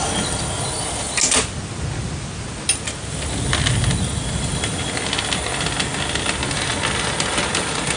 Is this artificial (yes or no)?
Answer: no